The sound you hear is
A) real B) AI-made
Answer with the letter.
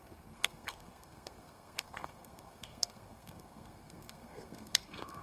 B